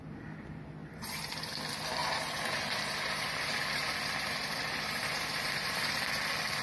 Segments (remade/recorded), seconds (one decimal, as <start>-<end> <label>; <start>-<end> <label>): 0.0-0.8 recorded; 0.8-1.3 remade; 1.3-2.0 recorded; 2.0-6.0 remade; 6.0-6.6 recorded